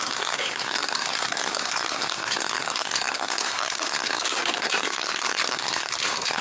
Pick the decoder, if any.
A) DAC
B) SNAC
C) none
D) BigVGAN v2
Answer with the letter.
B